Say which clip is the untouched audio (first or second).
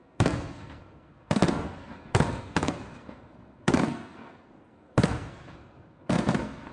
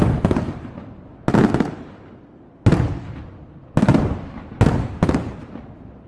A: second